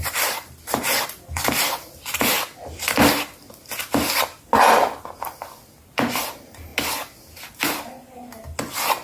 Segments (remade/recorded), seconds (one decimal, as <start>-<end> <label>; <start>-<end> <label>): 0.0-9.0 recorded